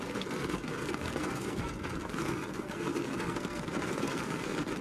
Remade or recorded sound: remade